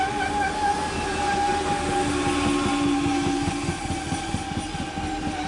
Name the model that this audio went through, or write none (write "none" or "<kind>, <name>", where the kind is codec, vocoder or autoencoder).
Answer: none